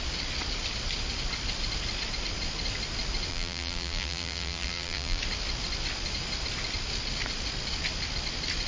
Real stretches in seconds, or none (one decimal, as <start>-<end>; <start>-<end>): 0.0-3.3; 5.2-8.7